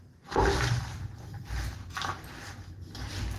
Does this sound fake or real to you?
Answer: fake